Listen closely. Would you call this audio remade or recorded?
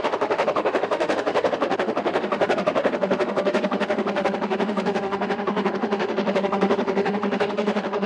remade